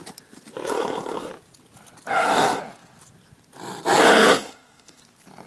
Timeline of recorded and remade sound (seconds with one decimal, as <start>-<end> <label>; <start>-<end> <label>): 0.0-0.7 recorded; 0.7-1.3 remade; 1.3-2.1 recorded; 2.1-2.6 remade; 2.6-4.3 recorded; 4.3-5.0 remade; 5.0-5.5 recorded

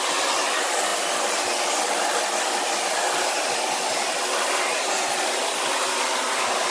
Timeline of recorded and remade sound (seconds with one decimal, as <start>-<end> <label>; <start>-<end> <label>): 0.0-6.7 recorded

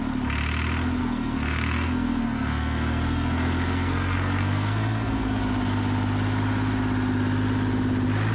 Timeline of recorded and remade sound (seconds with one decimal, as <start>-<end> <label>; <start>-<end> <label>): 0.0-1.0 recorded; 1.0-5.4 remade; 5.4-8.3 recorded

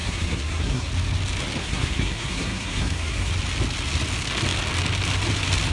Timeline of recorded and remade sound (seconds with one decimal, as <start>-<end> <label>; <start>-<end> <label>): 0.0-0.9 remade; 0.9-1.6 recorded; 1.6-3.3 remade; 3.3-5.7 recorded

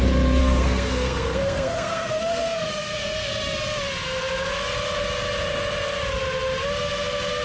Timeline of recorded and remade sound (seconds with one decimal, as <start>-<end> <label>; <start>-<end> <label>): 0.0-0.4 recorded; 0.4-3.3 remade; 3.3-7.4 recorded

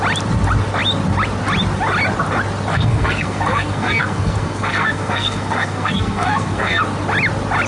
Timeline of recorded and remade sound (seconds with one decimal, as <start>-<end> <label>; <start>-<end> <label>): 0.0-2.7 recorded; 2.7-6.8 remade; 6.8-7.7 recorded

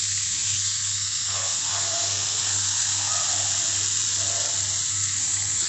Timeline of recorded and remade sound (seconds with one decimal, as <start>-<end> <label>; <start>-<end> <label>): 0.0-3.1 remade; 3.1-4.9 recorded; 4.9-5.7 remade